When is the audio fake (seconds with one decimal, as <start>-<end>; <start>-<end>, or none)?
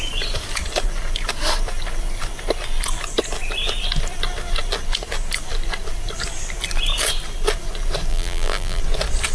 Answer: 8.1-8.8